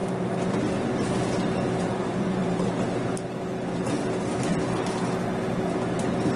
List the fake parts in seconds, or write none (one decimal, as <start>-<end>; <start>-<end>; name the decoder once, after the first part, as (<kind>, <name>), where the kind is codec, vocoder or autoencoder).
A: 1.9-2.4 (vocoder, Vocos)